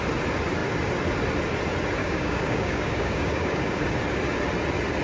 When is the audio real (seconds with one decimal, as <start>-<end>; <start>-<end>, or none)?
0.0-2.0; 3.8-5.0